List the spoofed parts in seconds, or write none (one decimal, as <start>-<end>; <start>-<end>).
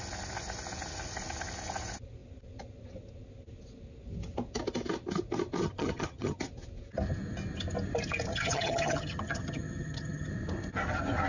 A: 5.6-6.4; 8.3-10.3